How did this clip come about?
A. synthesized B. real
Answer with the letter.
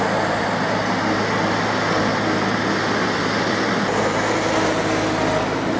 B